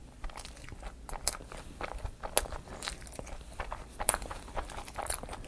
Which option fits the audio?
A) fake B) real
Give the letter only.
B